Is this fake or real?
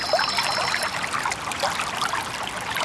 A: real